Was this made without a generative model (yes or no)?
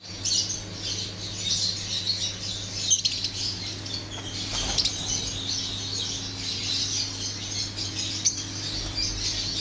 yes